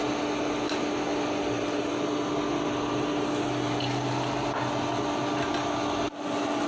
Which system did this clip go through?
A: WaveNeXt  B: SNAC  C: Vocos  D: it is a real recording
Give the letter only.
D